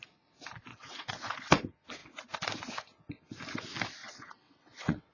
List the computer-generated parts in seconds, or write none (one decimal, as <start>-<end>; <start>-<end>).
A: 0.7-1.5; 4.0-5.1